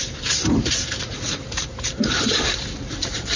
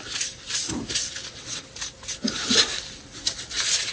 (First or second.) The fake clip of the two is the first